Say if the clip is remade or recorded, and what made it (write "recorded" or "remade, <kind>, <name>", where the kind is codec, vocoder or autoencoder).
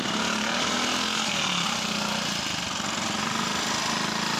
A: recorded